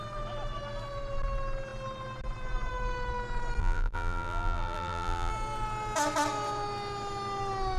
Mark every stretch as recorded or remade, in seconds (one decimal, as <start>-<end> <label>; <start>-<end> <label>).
0.0-3.6 recorded; 3.6-5.3 remade; 5.3-7.8 recorded